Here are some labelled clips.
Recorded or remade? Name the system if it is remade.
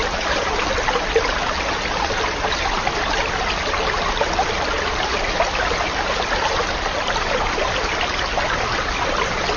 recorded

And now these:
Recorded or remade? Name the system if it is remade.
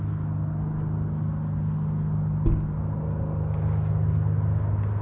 recorded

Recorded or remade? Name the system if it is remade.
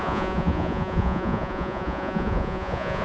remade, vocoder, Vocos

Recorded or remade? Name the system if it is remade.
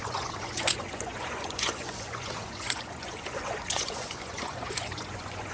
remade, vocoder, Vocos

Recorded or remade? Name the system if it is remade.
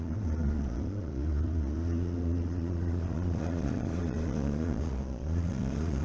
remade, vocoder, Vocos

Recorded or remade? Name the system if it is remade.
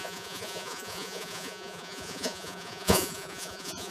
remade, vocoder, Vocos